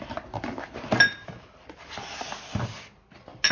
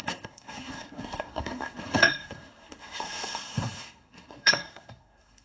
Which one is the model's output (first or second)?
second